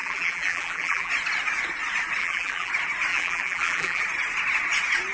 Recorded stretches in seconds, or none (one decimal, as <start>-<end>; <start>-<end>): 1.1-2.2; 2.7-3.1; 4.0-5.1